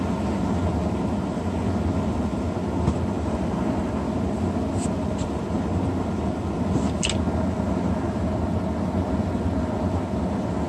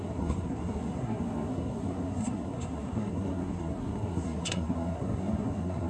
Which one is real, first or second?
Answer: first